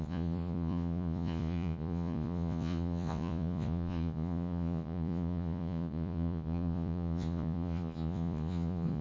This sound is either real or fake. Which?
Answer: fake